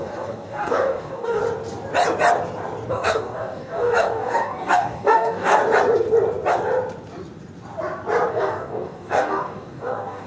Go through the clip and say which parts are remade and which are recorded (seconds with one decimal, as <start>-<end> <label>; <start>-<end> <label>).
0.0-1.4 remade; 1.4-2.9 recorded; 2.9-5.6 remade; 5.6-8.3 recorded; 8.3-10.3 remade

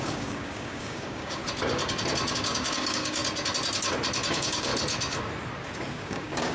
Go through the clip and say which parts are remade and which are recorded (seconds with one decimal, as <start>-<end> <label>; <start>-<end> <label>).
0.0-1.4 remade; 1.4-2.3 recorded; 2.3-3.2 remade; 3.2-4.2 recorded; 4.2-4.7 remade; 4.7-5.9 recorded; 5.9-6.5 remade

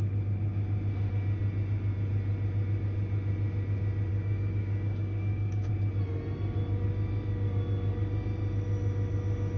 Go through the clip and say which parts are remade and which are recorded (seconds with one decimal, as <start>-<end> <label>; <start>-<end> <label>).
0.0-4.1 recorded; 4.1-5.7 remade; 5.7-9.6 recorded

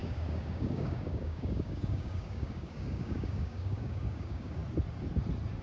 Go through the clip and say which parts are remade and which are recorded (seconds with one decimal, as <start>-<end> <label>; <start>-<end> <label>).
0.0-4.6 remade; 4.6-5.6 recorded

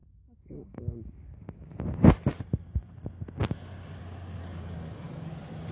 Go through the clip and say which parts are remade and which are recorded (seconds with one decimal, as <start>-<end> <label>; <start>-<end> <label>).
0.0-0.8 remade; 0.8-4.4 recorded; 4.4-5.3 remade; 5.3-5.7 recorded

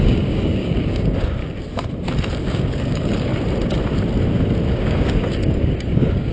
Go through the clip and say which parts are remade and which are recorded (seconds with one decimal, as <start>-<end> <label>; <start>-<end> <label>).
0.0-1.4 remade; 1.4-2.3 recorded; 2.3-3.3 remade; 3.3-4.7 recorded; 4.7-6.3 remade

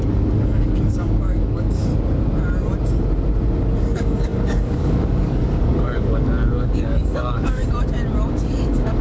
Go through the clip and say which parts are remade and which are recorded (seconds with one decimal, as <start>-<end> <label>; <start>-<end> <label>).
0.0-1.9 remade; 1.9-3.8 recorded; 3.8-7.6 remade; 7.6-8.3 recorded; 8.3-9.0 remade

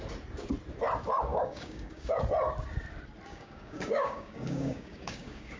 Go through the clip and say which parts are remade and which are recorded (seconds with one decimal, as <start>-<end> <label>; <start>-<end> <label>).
0.0-1.3 recorded; 1.3-2.2 remade; 2.2-3.3 recorded; 3.3-5.6 remade